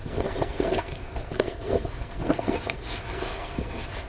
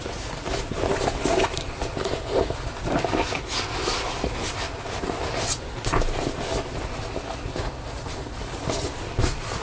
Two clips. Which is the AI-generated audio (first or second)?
first